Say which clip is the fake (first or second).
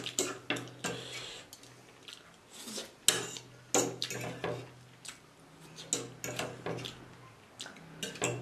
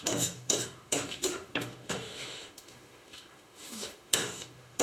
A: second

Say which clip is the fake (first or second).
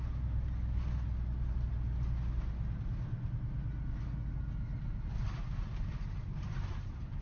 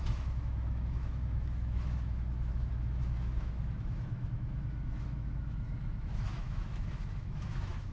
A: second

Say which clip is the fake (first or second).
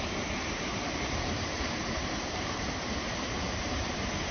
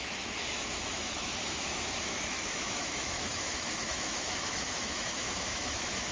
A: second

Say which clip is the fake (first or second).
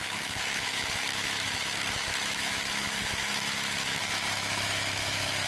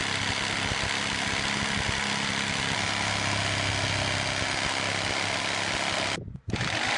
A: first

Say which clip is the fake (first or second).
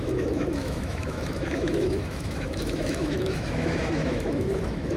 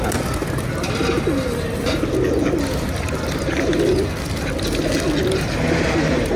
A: first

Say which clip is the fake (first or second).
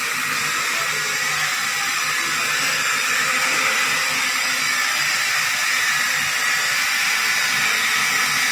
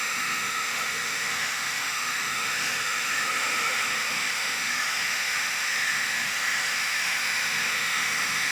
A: second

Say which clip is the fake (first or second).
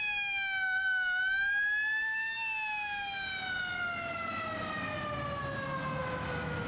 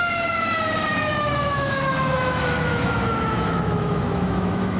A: second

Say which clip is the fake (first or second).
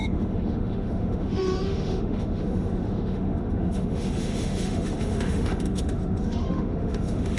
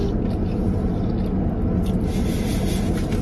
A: first